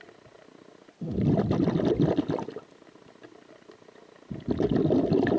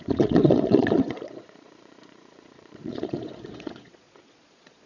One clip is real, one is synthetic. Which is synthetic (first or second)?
second